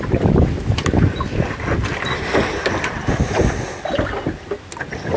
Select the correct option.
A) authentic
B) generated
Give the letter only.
A